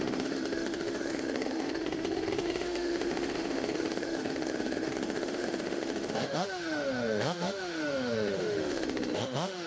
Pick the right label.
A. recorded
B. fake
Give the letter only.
B